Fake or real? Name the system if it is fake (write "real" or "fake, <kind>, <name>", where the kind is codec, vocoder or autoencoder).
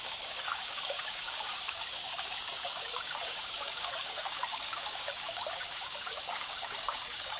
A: fake, codec, DAC